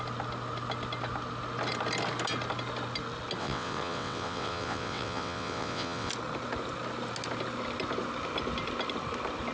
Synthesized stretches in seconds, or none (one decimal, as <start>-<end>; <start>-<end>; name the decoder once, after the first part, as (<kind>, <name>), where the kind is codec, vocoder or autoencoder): 3.4-6.1 (vocoder, WaveNeXt)